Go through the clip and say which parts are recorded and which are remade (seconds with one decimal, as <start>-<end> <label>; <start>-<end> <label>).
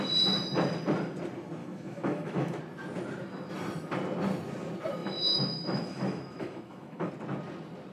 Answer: 0.0-1.6 recorded; 1.6-2.6 remade; 2.6-5.0 recorded; 5.0-7.1 remade; 7.1-7.9 recorded